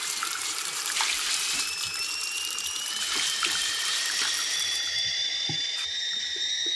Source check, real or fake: fake